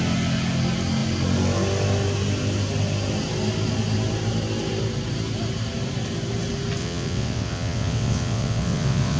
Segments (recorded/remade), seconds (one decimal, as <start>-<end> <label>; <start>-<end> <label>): 0.0-6.8 recorded; 6.8-9.2 remade